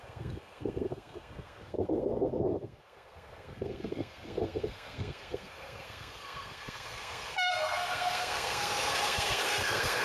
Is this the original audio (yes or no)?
no